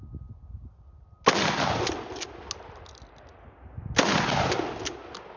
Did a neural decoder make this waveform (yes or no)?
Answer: no